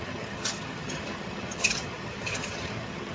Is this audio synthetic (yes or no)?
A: yes